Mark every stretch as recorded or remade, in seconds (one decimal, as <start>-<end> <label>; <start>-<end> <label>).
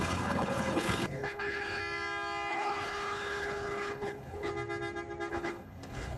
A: 0.0-1.8 remade; 1.8-2.5 recorded; 2.5-4.5 remade; 4.5-5.3 recorded; 5.3-6.2 remade